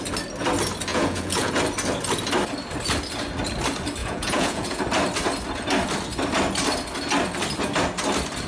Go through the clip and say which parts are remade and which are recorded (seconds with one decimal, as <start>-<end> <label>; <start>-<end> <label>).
0.0-0.9 recorded; 0.9-1.5 remade; 1.5-4.0 recorded; 4.0-4.8 remade; 4.8-8.5 recorded